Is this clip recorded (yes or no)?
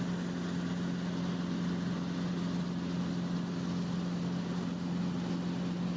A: yes